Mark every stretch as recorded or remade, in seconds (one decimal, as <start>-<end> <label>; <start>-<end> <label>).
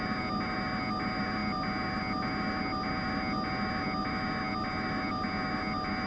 0.0-6.1 recorded